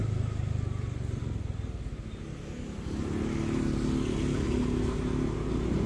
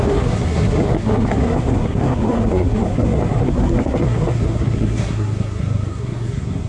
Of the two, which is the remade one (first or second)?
second